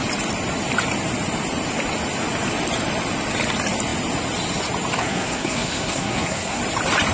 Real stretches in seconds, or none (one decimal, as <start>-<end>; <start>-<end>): 0.0-5.0; 6.6-7.1